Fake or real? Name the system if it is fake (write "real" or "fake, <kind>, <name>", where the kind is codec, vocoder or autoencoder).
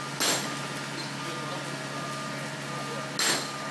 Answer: real